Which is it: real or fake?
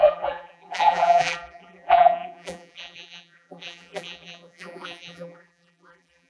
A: fake